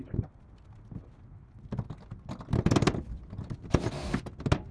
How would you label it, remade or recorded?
recorded